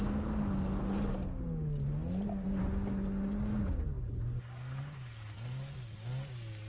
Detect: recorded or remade recorded